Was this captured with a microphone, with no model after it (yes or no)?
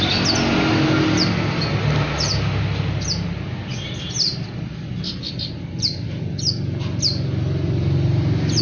yes